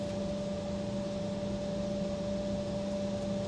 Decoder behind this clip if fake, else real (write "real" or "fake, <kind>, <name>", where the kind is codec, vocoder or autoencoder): real